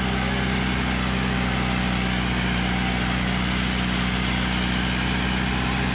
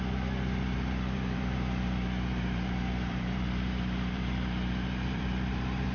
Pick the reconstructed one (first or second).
second